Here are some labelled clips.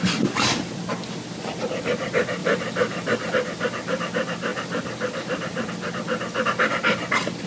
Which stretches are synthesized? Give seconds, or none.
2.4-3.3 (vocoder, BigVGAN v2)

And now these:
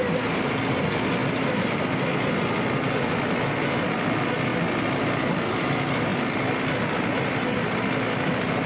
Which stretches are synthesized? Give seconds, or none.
none

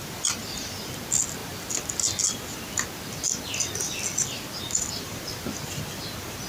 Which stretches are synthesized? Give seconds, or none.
none

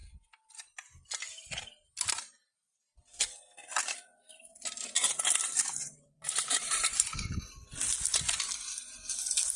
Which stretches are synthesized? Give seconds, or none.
5.7-7.5 (vocoder, BigVGAN v2)

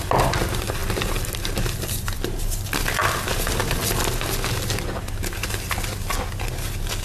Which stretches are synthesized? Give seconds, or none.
0.8-2.4 (vocoder, BigVGAN v2); 3.0-3.8

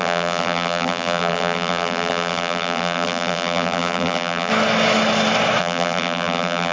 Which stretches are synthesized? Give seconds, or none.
0.0-4.5 (vocoder, BigVGAN v2); 5.6-6.7